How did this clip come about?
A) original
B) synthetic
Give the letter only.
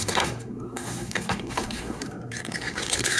B